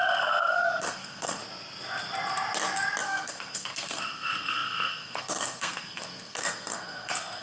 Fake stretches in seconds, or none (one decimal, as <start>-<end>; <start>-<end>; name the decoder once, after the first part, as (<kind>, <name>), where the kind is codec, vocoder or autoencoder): 0.0-1.4 (codec, SNAC); 3.0-7.4